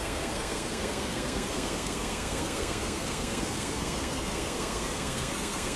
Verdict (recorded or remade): remade